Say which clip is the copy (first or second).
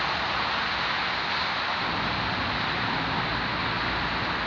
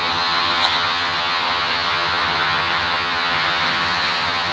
second